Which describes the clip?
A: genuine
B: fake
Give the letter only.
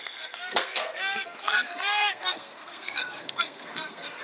B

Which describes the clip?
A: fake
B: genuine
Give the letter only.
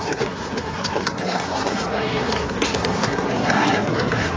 A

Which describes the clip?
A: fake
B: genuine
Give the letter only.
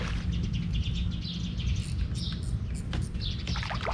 B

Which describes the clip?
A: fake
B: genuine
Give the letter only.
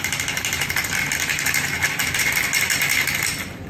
B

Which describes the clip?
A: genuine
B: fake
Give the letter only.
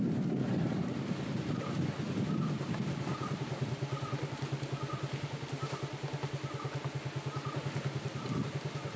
A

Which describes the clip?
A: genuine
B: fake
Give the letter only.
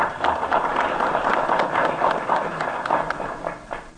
A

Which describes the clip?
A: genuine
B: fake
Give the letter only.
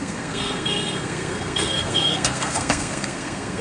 B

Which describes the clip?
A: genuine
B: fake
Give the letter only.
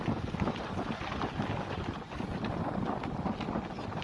A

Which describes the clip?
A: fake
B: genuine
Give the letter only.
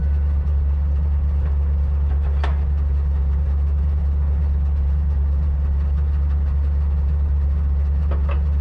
B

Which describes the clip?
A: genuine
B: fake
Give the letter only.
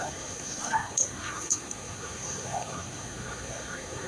B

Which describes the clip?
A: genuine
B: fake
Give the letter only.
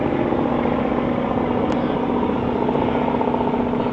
A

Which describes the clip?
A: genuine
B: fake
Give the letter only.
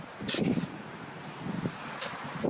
A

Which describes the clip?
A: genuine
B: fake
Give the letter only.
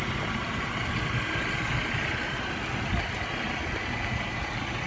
A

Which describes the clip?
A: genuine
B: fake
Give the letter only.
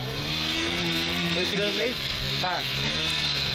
B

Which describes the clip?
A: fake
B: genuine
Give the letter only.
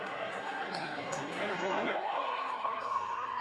A